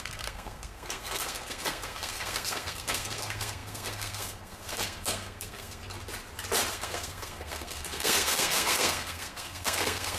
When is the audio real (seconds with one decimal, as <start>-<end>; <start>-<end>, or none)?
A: 5.8-6.7